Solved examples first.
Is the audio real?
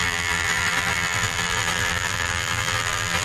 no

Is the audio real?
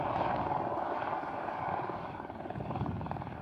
no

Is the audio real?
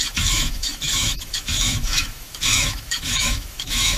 no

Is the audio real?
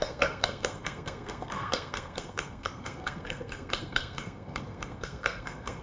no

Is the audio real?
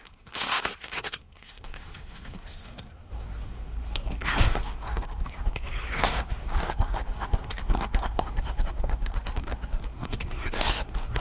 no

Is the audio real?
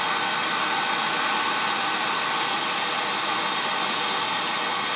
yes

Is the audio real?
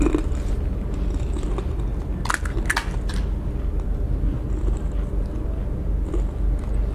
yes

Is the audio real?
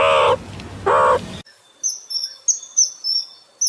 yes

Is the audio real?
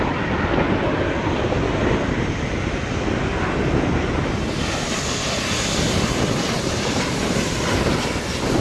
yes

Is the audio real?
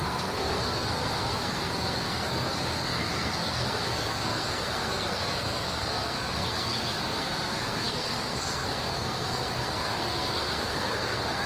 no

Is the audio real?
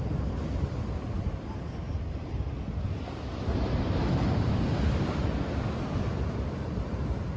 yes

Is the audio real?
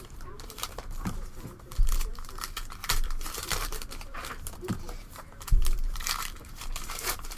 no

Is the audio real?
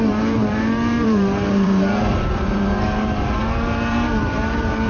no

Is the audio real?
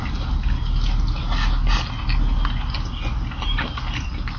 yes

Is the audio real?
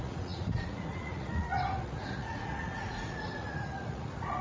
no